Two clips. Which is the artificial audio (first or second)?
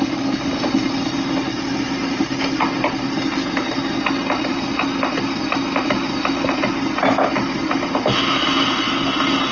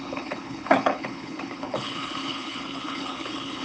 second